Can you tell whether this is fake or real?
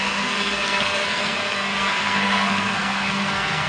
fake